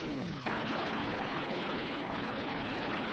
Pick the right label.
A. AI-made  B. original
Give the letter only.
A